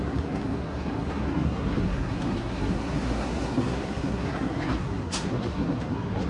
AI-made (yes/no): yes